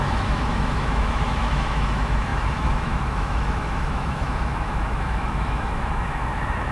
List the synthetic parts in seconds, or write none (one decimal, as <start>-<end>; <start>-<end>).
0.0-6.7